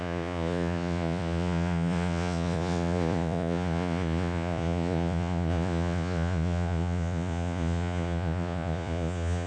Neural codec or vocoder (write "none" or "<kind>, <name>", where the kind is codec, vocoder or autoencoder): vocoder, Vocos